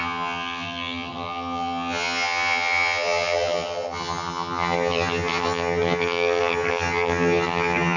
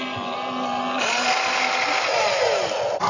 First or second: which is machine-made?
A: first